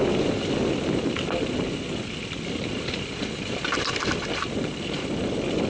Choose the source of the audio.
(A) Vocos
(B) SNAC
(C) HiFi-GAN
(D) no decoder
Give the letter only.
D